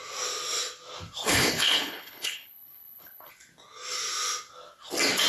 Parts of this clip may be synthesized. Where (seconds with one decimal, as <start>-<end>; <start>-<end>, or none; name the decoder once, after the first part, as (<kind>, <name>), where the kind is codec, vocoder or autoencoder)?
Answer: 1.2-3.3 (codec, HILCodec)